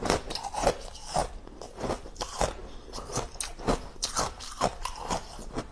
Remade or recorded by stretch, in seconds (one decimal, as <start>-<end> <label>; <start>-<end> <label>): 0.0-5.7 recorded